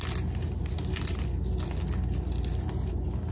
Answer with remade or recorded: recorded